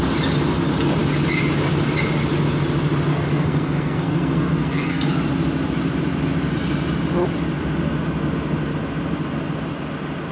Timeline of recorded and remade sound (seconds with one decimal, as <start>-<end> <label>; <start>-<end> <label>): 0.0-3.1 recorded; 3.1-5.1 remade; 5.1-10.3 recorded